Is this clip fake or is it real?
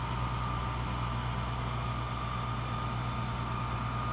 real